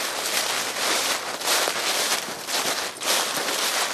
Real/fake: real